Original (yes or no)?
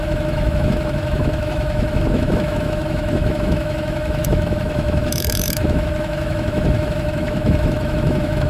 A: no